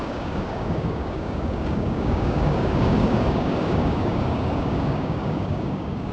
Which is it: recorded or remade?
remade